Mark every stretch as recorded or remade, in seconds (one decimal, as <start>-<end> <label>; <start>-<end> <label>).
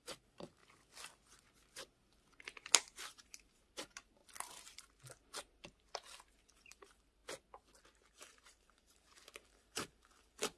0.0-0.6 remade; 0.6-3.1 recorded; 3.1-4.2 remade; 4.2-6.4 recorded; 6.4-7.2 remade; 7.2-8.1 recorded; 8.1-10.6 remade